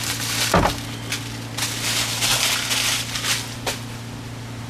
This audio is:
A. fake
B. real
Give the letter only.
B